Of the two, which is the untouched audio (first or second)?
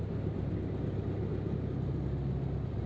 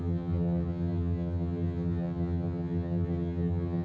first